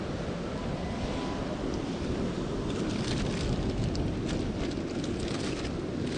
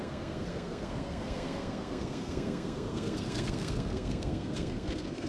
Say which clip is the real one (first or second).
first